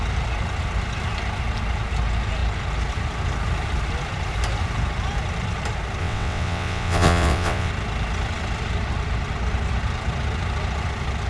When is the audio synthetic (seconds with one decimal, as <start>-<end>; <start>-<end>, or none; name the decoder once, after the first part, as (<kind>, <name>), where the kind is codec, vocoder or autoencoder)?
6.0-7.7 (vocoder, WaveNeXt)